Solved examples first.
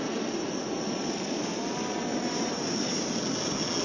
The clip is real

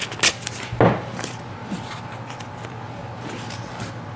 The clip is real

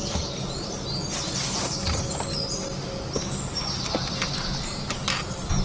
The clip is real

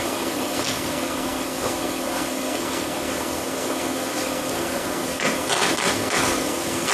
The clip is fake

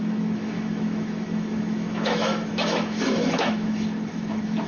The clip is fake